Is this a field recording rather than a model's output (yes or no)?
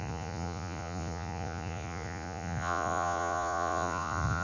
no